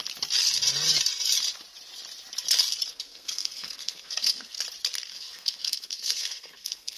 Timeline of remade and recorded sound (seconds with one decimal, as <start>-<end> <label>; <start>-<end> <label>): 0.0-2.9 recorded; 2.9-4.6 remade; 4.6-5.1 recorded; 5.1-7.0 remade